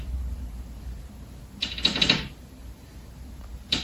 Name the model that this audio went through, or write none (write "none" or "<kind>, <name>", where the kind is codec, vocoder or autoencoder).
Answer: vocoder, BigVGAN v2